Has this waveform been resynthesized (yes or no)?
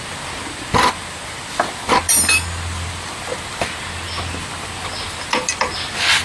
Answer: no